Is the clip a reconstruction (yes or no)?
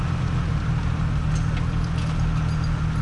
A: no